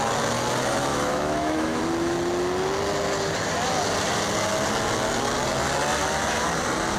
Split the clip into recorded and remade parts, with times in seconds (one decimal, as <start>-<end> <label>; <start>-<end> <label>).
0.0-0.9 recorded; 0.9-1.8 remade; 1.8-7.0 recorded